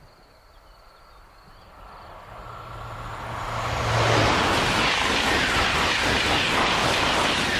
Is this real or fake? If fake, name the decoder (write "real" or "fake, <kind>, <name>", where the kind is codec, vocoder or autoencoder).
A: real